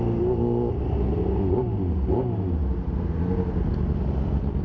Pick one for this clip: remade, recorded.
recorded